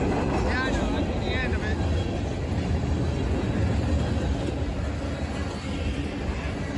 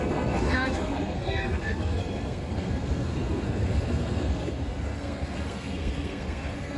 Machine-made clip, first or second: second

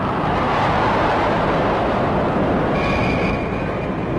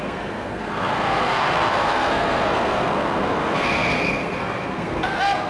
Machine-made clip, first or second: second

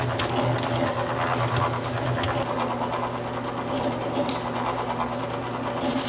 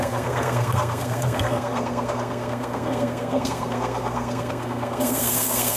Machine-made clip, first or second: second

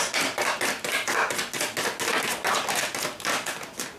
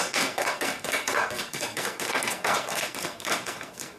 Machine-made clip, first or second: second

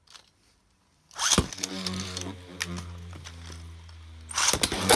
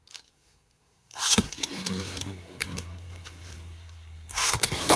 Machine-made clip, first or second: second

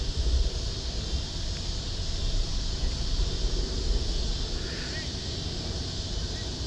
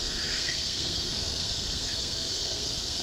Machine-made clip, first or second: second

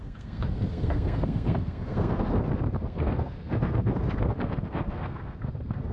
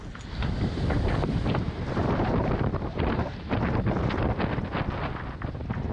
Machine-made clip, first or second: first